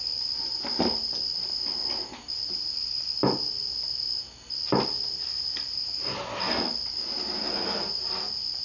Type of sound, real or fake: real